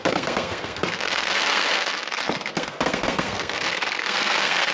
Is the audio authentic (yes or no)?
no